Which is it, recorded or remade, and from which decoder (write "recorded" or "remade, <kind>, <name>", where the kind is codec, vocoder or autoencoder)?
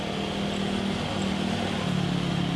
recorded